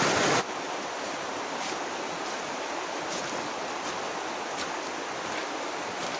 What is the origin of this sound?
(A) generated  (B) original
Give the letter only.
B